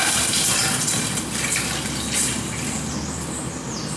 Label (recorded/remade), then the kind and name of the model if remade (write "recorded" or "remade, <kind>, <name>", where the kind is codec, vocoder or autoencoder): remade, vocoder, BigVGAN v2